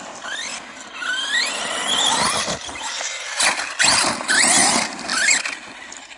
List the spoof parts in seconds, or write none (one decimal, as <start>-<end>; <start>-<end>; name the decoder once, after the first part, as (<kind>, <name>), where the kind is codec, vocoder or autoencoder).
none

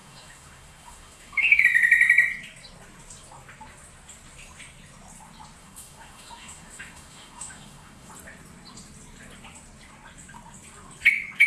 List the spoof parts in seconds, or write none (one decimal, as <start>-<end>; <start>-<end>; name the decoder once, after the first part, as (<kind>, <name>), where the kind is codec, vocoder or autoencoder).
0.0-1.6 (autoencoder, DAC-VAE); 5.6-8.1

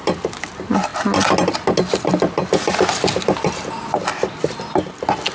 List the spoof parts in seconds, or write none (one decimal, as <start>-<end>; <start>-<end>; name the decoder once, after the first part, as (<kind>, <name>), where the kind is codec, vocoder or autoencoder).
none

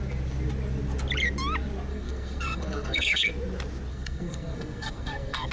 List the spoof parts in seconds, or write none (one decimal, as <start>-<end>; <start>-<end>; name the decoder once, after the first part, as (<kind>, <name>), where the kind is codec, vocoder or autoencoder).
1.9-3.3 (codec, SNAC); 3.9-5.5

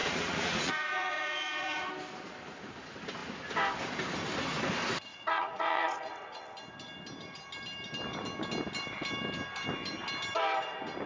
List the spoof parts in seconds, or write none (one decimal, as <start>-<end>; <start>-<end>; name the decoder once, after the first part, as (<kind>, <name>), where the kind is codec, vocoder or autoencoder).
0.0-1.9 (vocoder, Vocos); 5.1-6.4

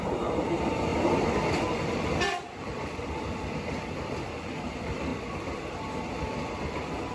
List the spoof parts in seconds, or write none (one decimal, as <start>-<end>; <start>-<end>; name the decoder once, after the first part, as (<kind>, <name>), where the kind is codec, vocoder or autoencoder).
0.0-5.1 (vocoder, BigVGAN v2); 5.8-7.1